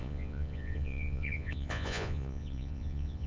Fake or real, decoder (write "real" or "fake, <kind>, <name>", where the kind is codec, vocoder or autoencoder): fake, vocoder, Vocos